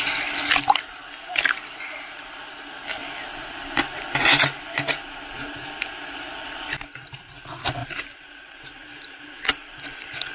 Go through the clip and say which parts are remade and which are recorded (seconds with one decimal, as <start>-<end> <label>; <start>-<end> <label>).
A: 0.0-7.8 recorded; 7.8-9.8 remade; 9.8-10.3 recorded

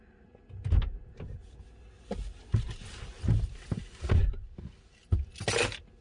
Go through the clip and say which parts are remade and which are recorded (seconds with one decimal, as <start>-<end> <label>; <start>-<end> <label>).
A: 0.0-6.0 recorded

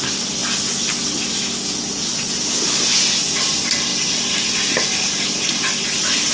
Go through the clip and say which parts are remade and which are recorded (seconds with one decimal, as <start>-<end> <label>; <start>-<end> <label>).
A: 0.0-6.3 recorded